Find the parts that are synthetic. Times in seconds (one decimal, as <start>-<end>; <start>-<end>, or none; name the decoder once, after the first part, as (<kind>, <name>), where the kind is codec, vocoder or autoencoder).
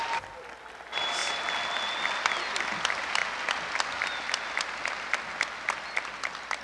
none